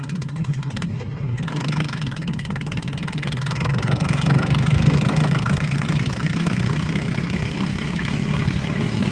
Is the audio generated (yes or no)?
yes